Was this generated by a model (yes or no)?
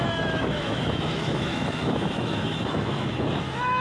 yes